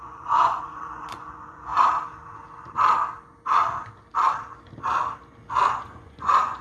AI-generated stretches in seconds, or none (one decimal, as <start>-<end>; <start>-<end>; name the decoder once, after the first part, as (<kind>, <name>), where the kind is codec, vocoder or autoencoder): 0.0-1.7 (vocoder, Vocos); 5.7-6.6